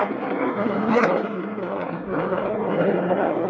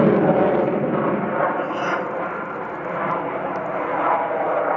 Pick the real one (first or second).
second